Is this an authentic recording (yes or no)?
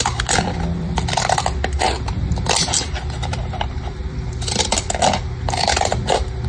yes